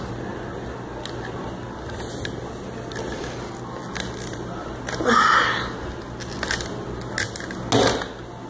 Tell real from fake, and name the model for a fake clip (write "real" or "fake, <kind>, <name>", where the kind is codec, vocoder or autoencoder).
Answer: real